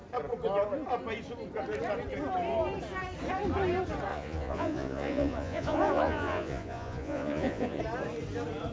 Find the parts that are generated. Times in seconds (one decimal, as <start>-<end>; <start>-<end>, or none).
4.1-7.8